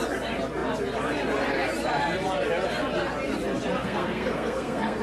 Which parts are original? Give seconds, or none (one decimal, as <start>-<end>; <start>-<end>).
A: 0.0-3.8